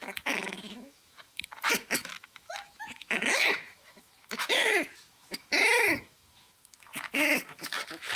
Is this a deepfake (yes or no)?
yes